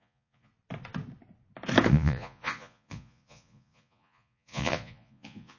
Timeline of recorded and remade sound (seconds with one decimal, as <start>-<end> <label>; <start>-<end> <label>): 0.0-0.5 remade; 0.5-1.9 recorded; 1.9-5.6 remade